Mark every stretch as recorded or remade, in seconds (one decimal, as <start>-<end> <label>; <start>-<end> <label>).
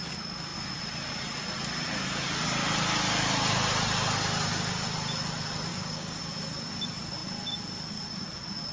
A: 0.0-5.7 recorded; 5.7-6.2 remade; 6.2-8.7 recorded